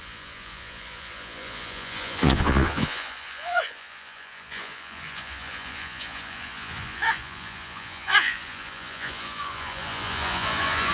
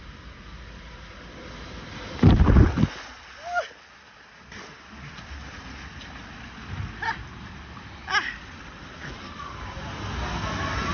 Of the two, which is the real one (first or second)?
second